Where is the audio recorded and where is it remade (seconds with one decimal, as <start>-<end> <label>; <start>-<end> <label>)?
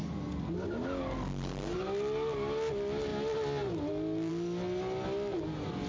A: 0.0-5.9 recorded